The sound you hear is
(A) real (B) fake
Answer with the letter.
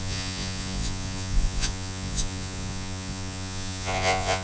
B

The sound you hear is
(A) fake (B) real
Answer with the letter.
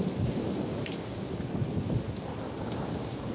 B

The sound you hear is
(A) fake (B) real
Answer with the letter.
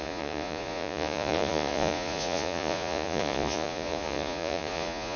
A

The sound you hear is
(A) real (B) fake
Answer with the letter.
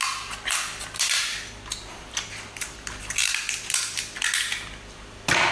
A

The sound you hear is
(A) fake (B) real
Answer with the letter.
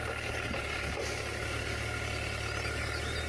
B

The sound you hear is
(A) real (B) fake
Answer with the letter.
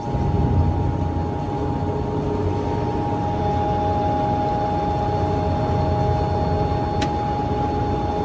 A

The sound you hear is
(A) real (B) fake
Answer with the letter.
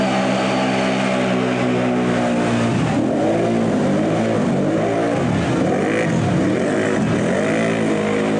A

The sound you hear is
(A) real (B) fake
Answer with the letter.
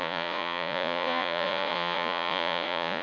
B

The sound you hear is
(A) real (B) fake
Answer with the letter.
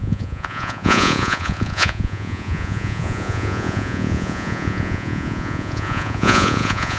B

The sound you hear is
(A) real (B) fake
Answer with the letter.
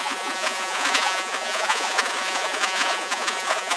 B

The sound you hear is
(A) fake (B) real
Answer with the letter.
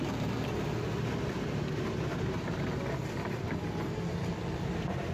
B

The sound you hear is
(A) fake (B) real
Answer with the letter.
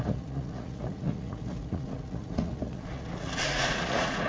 A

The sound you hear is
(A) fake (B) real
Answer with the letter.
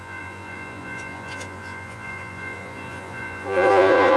A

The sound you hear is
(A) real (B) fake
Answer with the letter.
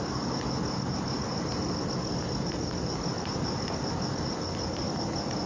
A